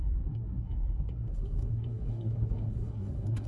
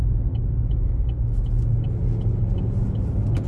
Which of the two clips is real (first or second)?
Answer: second